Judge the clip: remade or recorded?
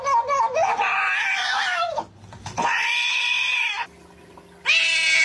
recorded